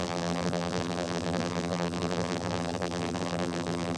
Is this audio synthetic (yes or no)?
yes